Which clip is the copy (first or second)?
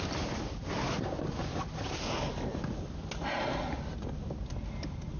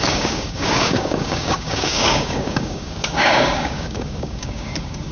second